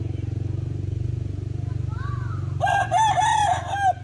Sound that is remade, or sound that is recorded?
recorded